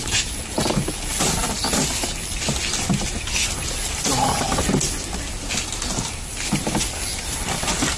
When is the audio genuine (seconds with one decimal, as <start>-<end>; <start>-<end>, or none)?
0.0-8.0